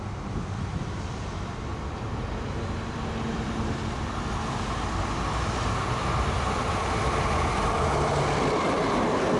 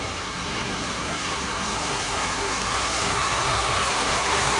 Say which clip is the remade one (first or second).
second